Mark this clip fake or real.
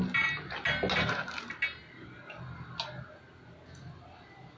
real